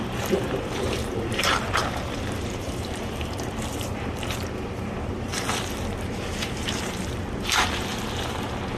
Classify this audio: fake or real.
fake